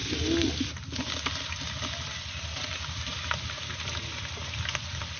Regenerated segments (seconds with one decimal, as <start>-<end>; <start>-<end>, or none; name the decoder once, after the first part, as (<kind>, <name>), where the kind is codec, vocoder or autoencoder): none